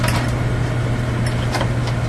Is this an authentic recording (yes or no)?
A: yes